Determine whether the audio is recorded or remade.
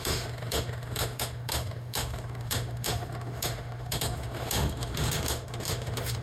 remade